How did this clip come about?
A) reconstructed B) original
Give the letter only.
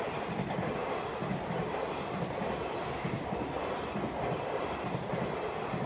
B